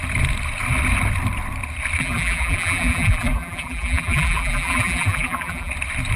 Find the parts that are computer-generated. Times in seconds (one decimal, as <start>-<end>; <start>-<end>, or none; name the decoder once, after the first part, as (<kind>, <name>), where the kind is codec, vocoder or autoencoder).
2.0-5.7 (vocoder, BigVGAN v2)